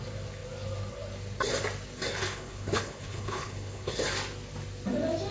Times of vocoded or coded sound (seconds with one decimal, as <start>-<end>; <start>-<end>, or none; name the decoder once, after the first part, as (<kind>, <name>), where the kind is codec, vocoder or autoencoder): 2.1-3.9 (codec, HILCodec)